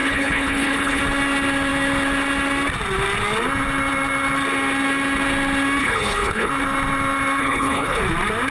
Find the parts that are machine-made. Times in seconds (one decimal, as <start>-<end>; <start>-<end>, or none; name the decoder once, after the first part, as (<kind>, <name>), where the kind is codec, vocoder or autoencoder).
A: 0.0-1.0 (codec, HILCodec); 5.8-6.5; 7.4-8.0